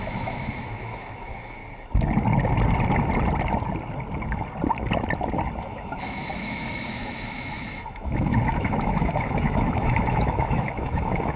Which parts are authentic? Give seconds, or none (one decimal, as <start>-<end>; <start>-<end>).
1.6-5.6